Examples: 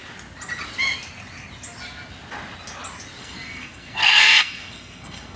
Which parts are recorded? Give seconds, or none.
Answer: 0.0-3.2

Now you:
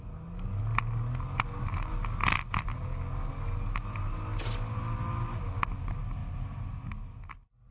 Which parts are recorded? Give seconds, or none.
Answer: 0.0-7.7